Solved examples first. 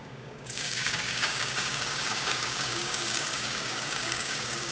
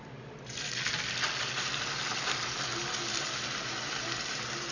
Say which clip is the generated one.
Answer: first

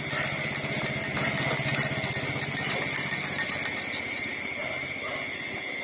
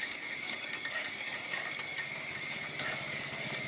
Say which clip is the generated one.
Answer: second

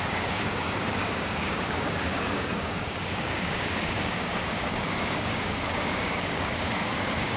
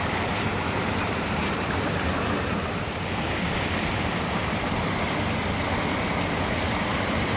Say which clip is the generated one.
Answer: first